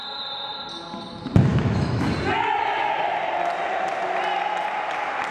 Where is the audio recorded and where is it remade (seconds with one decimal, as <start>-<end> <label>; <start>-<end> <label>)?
0.0-1.5 recorded; 1.5-2.1 remade; 2.1-5.3 recorded